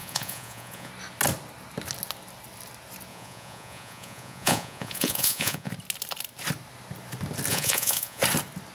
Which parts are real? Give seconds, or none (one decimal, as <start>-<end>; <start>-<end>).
0.9-3.1; 5.7-7.5; 8.2-8.7